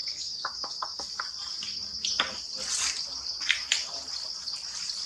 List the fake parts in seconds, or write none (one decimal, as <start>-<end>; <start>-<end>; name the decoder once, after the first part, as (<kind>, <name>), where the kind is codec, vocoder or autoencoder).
0.0-1.2 (codec, DAC)